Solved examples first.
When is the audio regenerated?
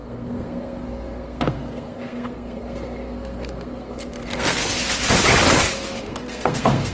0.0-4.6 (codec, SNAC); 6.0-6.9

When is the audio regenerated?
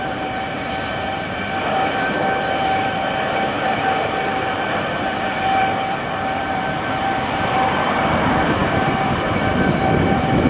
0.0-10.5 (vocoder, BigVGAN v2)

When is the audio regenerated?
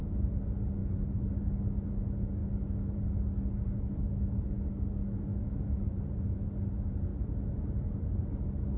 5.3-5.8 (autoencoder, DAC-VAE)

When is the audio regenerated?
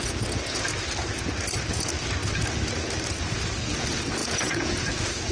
4.2-4.8 (vocoder, Vocos)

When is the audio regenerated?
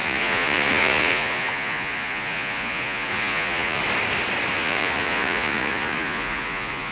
0.0-3.8 (vocoder, Vocos); 4.5-6.9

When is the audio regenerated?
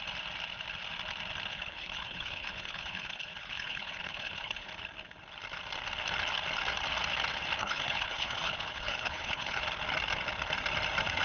1.5-4.7 (codec, HILCodec); 7.6-9.6